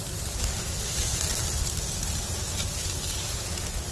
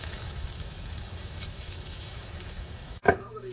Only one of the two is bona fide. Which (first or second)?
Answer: first